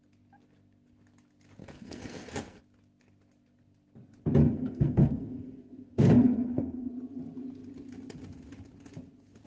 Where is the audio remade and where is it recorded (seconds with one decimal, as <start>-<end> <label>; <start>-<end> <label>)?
0.0-1.6 recorded; 1.6-2.6 remade; 2.6-4.4 recorded; 4.4-6.9 remade; 6.9-9.5 recorded